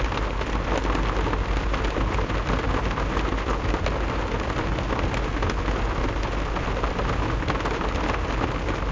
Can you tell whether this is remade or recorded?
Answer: recorded